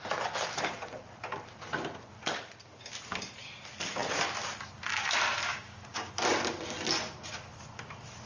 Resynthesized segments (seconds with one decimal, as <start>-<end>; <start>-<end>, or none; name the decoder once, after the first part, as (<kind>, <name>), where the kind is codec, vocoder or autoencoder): 5.5-6.1 (codec, DAC)